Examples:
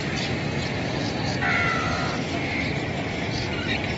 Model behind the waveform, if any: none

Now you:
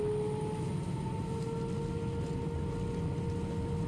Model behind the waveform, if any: none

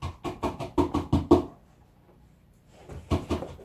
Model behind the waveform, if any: none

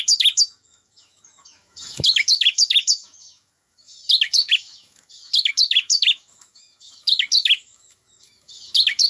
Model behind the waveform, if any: autoencoder, DAC-VAE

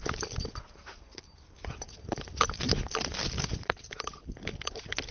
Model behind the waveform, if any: none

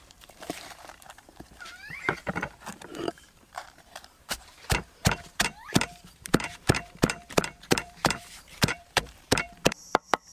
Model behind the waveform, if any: vocoder, BigVGAN v2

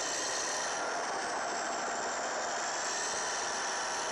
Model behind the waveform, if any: none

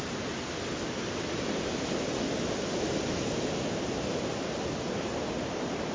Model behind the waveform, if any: none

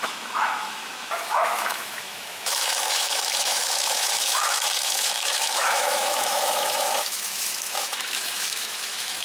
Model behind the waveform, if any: autoencoder, DAC-VAE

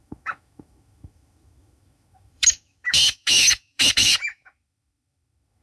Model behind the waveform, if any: autoencoder, DAC-VAE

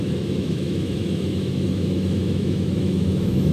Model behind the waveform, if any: autoencoder, DAC-VAE